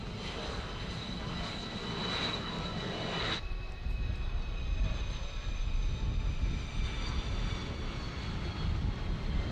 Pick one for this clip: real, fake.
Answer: real